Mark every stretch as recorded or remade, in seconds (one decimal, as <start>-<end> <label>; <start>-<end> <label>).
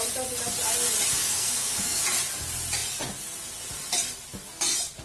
0.0-1.2 recorded; 1.2-2.0 remade; 2.0-5.0 recorded